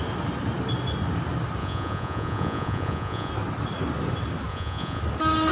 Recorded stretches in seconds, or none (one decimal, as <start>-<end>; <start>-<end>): 0.0-1.6; 3.3-4.5; 5.0-5.5

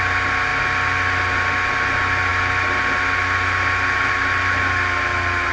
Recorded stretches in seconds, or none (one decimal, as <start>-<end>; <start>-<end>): 0.0-5.5

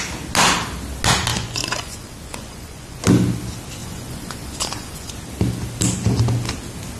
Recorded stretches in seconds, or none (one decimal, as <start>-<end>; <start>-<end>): 0.0-1.3; 3.0-3.8; 5.1-7.0

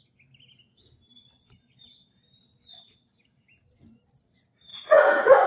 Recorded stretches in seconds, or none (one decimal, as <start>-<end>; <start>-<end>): 0.0-4.7

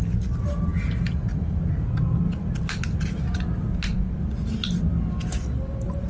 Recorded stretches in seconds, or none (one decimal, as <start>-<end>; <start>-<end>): 0.0-6.1

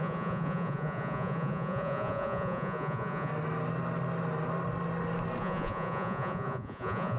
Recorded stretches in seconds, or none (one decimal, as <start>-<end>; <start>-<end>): 3.3-5.4

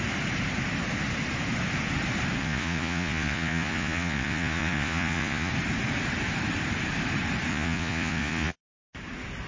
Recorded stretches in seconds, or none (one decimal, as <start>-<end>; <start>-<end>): 0.0-2.4; 5.5-7.5; 8.6-9.5

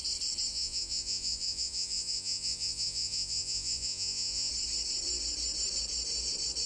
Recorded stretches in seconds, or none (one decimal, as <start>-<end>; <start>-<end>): 0.0-0.5; 4.5-6.7